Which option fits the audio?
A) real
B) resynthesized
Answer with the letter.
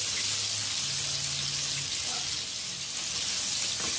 A